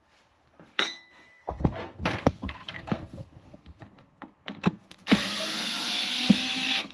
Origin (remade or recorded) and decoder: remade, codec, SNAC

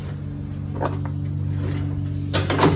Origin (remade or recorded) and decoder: recorded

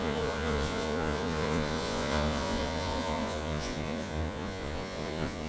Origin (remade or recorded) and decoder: remade, vocoder, Vocos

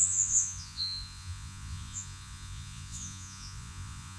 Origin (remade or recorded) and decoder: remade, vocoder, Vocos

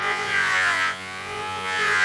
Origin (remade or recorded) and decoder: remade, vocoder, Vocos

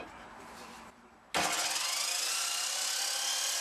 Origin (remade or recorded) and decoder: recorded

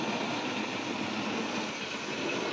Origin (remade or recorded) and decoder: recorded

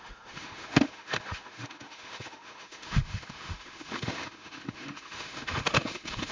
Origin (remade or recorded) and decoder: remade, autoencoder, DAC-VAE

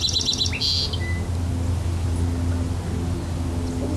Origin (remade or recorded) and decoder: recorded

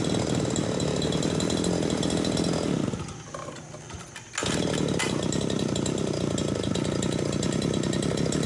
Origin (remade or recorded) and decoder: recorded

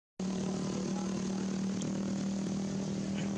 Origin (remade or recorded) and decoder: recorded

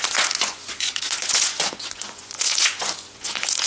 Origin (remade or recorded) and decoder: remade, vocoder, Vocos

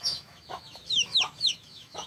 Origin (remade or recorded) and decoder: remade, autoencoder, DAC-VAE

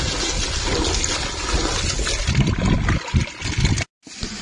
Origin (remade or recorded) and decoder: recorded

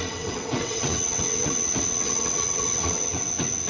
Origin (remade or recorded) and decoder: remade, vocoder, WaveNeXt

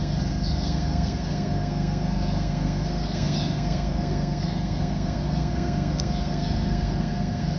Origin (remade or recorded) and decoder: remade, codec, SNAC